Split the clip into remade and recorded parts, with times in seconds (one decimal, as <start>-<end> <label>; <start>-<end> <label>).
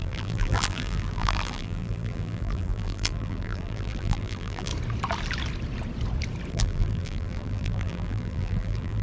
0.0-4.7 remade; 4.7-6.5 recorded; 6.5-9.0 remade